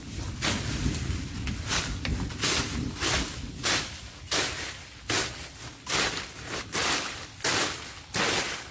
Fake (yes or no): no